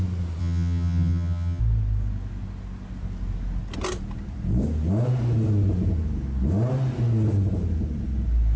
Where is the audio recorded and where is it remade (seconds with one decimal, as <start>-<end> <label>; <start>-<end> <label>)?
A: 0.0-0.4 recorded; 0.4-1.6 remade; 1.6-8.6 recorded